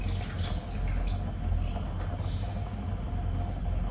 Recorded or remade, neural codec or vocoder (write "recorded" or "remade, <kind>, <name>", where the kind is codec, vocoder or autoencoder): recorded